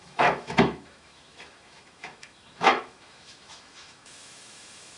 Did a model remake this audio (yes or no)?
yes